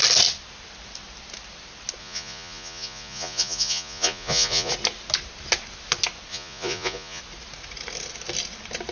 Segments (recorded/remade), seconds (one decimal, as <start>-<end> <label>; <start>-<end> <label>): 0.0-2.0 recorded; 2.0-4.7 remade; 4.7-6.3 recorded; 6.3-7.2 remade; 7.2-8.9 recorded